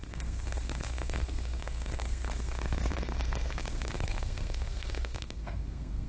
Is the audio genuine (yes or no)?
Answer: no